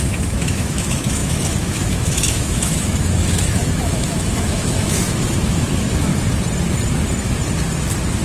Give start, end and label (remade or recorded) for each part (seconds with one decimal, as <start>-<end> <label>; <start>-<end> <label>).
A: 0.0-6.1 remade; 6.1-8.2 recorded